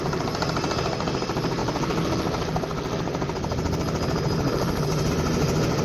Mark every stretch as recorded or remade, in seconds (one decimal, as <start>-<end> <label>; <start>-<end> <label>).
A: 0.0-5.8 recorded